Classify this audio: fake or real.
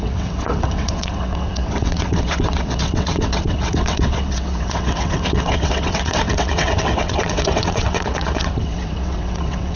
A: fake